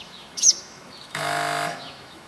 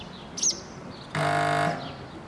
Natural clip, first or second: second